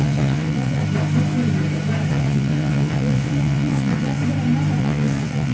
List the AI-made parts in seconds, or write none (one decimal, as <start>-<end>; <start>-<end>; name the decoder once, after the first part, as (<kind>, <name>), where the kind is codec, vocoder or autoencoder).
0.0-0.8 (vocoder, WaveNeXt); 2.1-4.2; 4.8-5.5

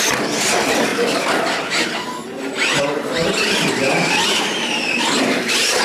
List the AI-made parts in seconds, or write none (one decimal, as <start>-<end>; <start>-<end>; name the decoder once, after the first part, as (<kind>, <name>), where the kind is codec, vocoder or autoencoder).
none

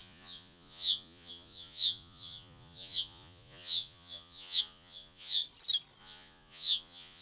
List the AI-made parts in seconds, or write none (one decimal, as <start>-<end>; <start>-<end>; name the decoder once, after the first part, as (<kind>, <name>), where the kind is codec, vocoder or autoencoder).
0.0-5.4 (vocoder, Vocos); 6.0-7.2

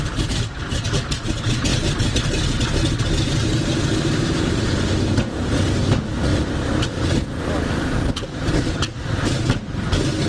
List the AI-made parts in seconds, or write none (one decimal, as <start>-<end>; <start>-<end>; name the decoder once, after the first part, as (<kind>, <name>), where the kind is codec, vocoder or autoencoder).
none

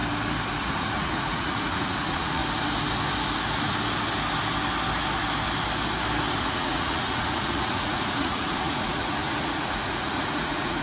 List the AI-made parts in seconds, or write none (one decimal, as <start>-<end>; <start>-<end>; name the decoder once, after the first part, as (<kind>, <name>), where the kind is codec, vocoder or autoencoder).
0.6-2.4 (vocoder, Vocos); 6.4-10.8

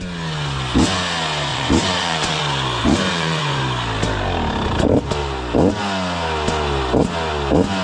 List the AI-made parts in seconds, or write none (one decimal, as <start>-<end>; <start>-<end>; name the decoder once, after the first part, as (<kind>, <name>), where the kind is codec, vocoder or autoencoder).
1.5-2.4 (vocoder, Vocos); 2.8-3.6

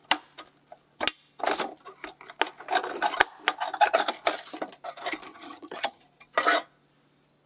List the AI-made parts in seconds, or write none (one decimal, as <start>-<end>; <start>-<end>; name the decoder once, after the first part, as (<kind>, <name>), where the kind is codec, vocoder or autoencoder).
5.3-6.0 (vocoder, HiFi-GAN)